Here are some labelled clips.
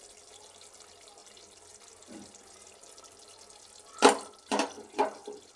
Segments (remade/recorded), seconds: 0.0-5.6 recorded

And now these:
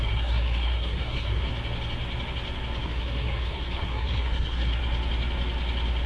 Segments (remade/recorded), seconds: 0.0-1.5 remade; 1.5-2.8 recorded; 2.8-4.8 remade; 4.8-6.1 recorded